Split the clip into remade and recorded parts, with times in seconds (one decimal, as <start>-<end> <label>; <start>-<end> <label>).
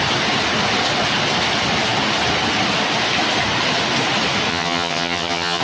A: 0.0-4.5 recorded; 4.5-5.6 remade